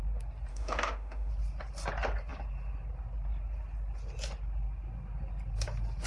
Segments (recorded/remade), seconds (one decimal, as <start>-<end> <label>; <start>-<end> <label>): 0.0-0.5 recorded; 0.5-1.3 remade; 1.3-6.1 recorded